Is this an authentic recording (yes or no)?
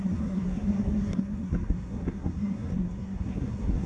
no